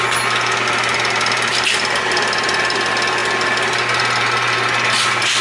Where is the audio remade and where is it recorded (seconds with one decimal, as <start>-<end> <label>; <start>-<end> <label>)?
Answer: 0.0-5.4 recorded